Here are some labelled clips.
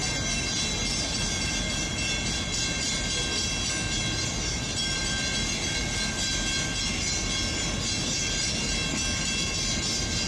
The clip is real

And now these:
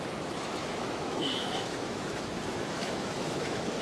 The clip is fake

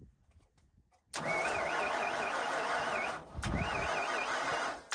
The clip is real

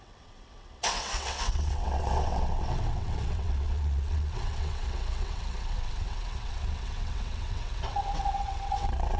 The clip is fake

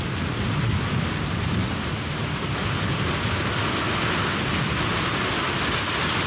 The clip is real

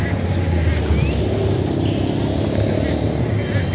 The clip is real